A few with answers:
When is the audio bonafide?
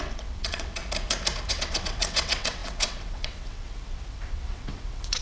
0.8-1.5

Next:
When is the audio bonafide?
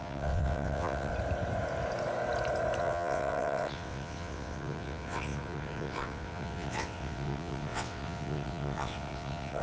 1.1-2.8